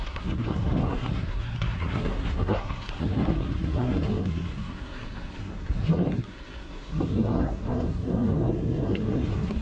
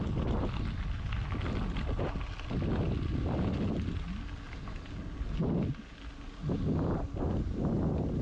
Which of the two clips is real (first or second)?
second